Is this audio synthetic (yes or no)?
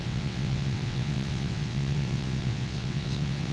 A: yes